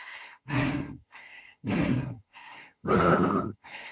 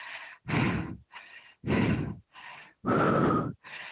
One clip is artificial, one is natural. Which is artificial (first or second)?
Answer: first